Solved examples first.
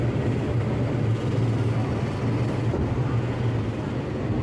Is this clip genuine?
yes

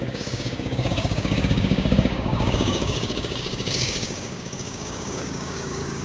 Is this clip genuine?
no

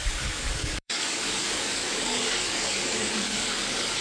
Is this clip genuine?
no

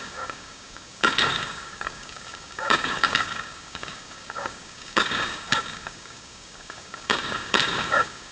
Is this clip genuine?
no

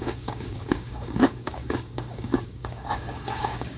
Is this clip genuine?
no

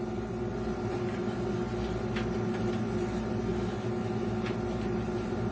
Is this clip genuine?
yes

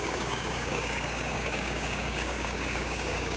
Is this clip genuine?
no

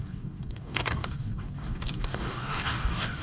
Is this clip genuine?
no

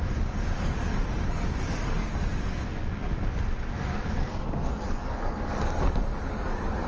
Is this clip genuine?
no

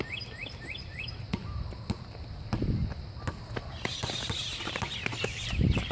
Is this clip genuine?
yes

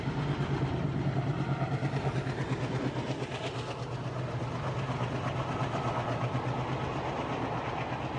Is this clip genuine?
yes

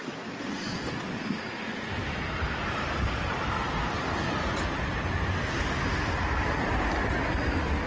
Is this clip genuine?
yes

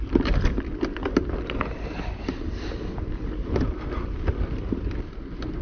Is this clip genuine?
yes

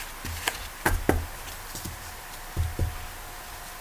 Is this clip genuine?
yes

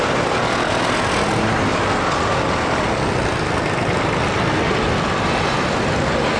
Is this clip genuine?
yes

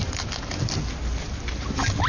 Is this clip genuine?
yes